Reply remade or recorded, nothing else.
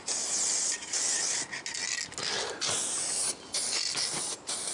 recorded